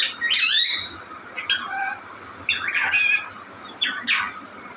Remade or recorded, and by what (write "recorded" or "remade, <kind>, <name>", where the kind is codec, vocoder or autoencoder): recorded